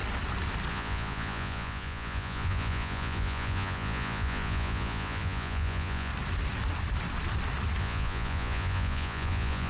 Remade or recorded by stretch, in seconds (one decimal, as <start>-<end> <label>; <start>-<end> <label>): 0.0-0.7 recorded; 0.7-6.1 remade; 6.1-7.8 recorded; 7.8-9.7 remade